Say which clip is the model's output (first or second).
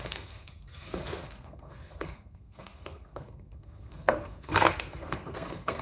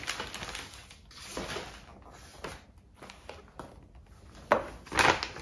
first